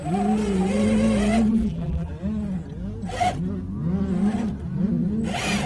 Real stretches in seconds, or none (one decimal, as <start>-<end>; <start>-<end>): 0.0-1.5; 2.1-5.7